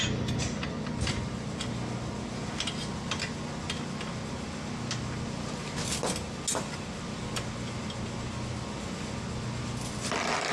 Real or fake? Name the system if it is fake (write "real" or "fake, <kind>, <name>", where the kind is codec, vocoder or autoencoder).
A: real